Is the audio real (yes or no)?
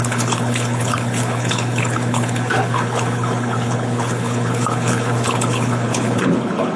no